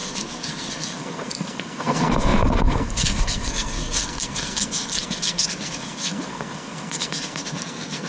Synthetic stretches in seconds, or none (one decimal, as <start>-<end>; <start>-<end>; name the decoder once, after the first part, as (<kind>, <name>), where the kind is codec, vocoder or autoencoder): 0.0-8.1 (codec, SNAC)